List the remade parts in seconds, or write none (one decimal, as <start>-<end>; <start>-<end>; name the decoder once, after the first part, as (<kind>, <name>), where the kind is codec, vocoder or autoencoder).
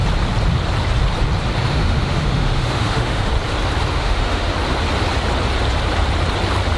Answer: 1.7-3.3 (autoencoder, DAC-VAE); 3.9-4.5